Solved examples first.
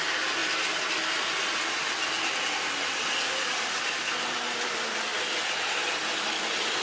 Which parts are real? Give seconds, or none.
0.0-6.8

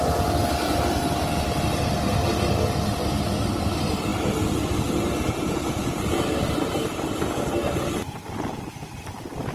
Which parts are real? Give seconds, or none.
0.0-9.5

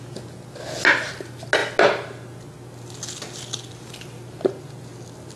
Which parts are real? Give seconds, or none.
0.0-5.4